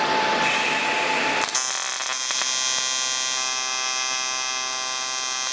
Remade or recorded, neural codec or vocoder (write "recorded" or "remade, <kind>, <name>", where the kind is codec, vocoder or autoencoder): recorded